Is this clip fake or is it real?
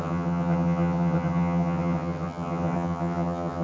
fake